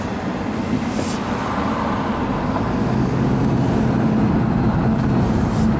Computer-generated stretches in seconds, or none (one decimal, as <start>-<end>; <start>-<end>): 2.8-3.4